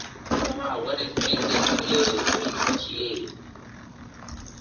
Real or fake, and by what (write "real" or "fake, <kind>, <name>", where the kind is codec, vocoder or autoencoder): real